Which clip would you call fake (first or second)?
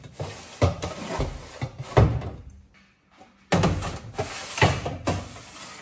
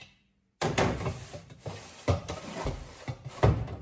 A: second